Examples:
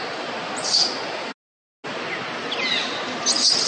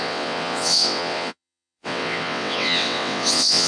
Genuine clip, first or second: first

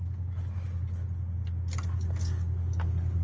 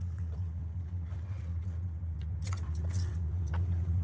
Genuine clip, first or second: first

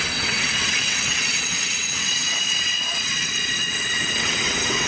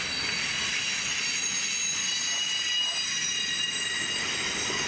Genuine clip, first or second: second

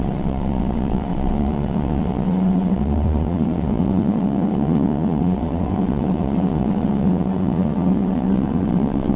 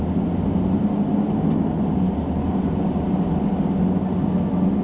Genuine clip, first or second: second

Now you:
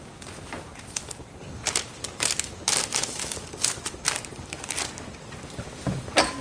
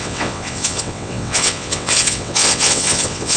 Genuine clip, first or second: first